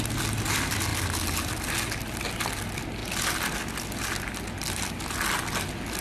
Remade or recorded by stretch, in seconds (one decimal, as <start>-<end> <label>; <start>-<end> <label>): 0.0-6.0 recorded